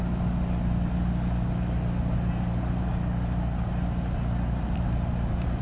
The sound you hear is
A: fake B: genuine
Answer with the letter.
B